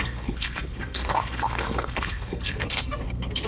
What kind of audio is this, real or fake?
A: fake